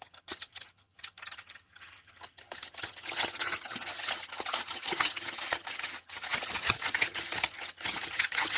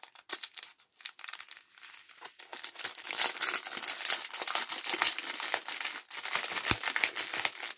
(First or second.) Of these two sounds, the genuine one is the second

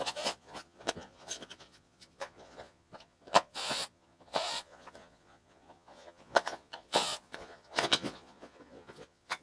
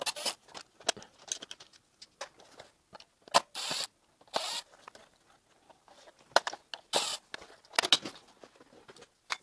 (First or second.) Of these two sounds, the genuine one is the second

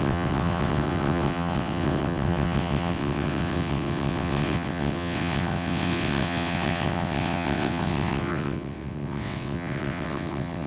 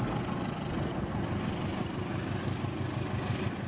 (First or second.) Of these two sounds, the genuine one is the second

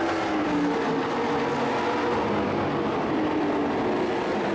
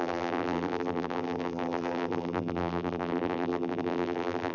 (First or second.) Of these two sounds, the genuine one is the first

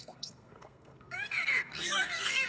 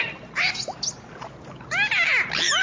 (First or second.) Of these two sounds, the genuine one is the second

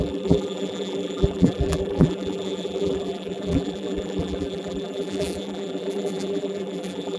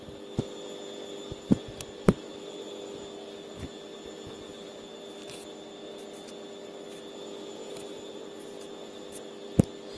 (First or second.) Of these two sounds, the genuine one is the second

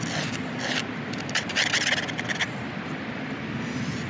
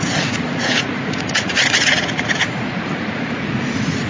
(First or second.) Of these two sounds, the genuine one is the first